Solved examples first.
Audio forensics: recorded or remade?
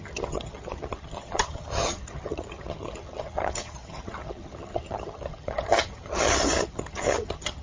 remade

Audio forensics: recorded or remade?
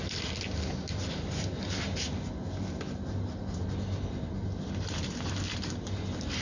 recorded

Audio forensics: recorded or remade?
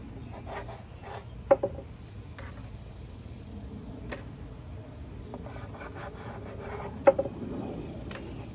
recorded